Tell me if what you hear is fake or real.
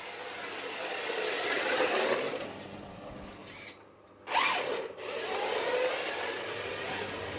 fake